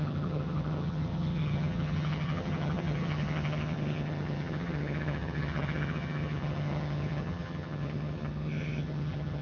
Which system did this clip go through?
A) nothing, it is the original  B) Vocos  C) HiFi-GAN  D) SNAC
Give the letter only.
C